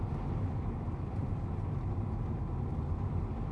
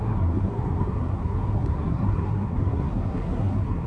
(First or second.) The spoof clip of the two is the second